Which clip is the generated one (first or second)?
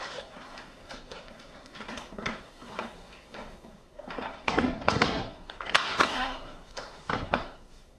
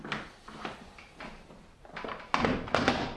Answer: first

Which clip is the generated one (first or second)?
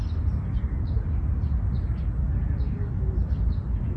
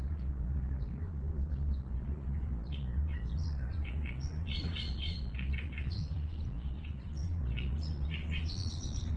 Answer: second